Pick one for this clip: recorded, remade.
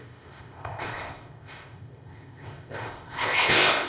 remade